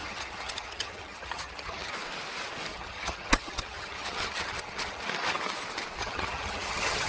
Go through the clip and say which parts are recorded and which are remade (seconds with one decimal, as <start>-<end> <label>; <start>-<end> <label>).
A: 0.0-1.9 remade; 1.9-2.7 recorded; 2.7-5.0 remade; 5.0-6.0 recorded; 6.0-7.1 remade